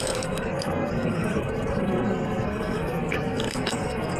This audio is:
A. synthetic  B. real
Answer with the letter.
A